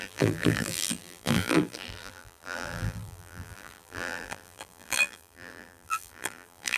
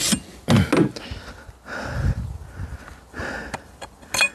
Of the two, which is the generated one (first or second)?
first